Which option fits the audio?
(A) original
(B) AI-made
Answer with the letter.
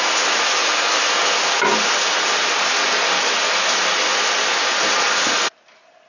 A